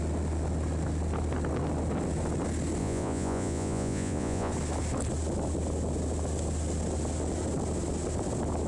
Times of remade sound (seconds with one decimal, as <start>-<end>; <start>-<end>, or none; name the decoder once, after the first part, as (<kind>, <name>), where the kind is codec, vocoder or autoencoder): 2.8-4.5 (vocoder, Vocos)